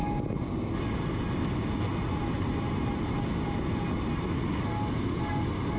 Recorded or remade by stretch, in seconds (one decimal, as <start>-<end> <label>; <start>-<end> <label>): 0.0-5.8 recorded